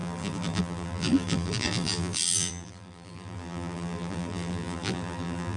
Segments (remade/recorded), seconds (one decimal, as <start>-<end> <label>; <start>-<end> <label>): 0.0-5.6 remade